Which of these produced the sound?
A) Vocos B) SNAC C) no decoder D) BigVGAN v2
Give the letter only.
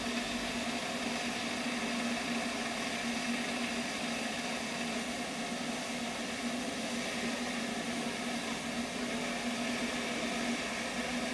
C